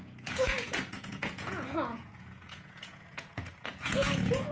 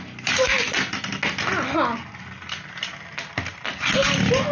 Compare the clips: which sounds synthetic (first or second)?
first